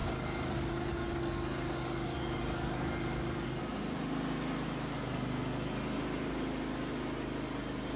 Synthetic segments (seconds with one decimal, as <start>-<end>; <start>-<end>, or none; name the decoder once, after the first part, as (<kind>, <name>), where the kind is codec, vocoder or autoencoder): 0.0-3.6 (codec, DAC)